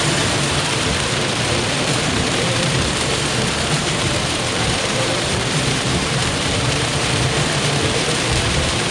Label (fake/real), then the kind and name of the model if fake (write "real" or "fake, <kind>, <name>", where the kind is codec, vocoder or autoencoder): fake, vocoder, BigVGAN v2